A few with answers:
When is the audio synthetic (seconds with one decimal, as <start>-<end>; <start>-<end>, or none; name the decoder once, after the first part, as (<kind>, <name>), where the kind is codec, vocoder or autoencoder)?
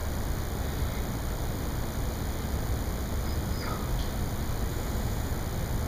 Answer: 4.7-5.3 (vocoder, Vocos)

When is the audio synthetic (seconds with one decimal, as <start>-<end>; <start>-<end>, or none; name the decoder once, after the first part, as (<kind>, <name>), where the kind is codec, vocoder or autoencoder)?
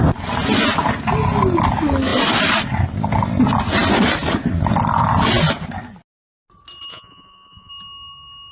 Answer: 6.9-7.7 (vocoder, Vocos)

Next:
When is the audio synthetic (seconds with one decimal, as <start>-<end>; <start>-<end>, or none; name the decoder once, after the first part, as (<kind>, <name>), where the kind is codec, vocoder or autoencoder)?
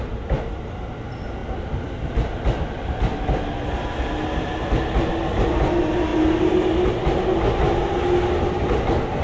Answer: none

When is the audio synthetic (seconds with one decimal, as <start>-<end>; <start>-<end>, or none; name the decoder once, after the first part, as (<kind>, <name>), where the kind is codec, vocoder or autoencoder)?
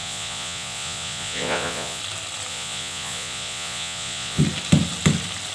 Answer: 0.0-2.0 (vocoder, Vocos); 2.5-4.4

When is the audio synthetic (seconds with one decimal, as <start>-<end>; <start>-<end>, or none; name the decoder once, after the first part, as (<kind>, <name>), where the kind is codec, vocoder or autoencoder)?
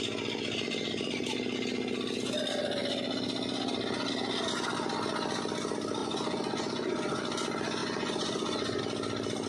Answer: 6.0-7.2 (vocoder, Vocos); 7.8-8.8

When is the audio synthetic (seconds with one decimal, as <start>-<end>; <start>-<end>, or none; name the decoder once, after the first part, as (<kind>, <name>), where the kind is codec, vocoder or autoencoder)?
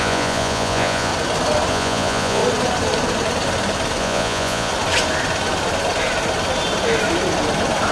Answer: 0.0-1.1 (vocoder, Vocos); 1.7-2.4; 4.0-4.7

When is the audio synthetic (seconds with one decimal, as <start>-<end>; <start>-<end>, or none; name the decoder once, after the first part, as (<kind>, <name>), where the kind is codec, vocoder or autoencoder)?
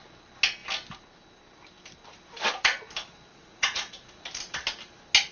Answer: 3.3-4.1 (vocoder, Vocos)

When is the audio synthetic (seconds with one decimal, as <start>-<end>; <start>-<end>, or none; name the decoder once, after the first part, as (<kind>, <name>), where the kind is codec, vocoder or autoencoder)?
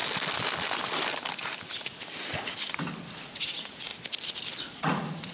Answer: 3.2-3.9 (vocoder, Vocos); 4.6-5.3